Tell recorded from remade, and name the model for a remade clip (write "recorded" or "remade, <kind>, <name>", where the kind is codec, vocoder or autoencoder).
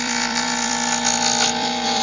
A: remade, vocoder, BigVGAN v2